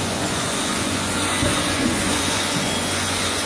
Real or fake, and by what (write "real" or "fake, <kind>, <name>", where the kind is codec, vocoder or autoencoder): fake, vocoder, Vocos